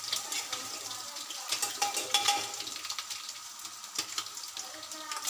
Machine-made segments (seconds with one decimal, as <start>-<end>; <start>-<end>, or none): 0.0-1.7